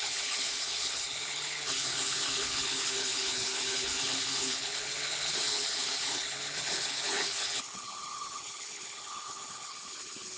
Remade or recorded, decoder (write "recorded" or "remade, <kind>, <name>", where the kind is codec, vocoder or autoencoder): remade, codec, HILCodec